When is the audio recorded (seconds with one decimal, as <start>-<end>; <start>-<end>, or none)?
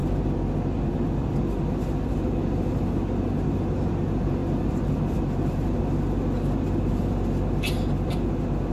0.0-8.7